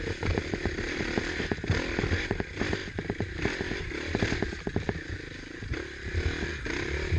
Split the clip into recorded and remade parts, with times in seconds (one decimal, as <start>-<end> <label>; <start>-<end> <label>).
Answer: 0.0-7.2 recorded